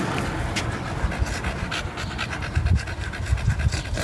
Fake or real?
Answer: real